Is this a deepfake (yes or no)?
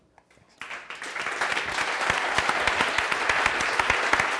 no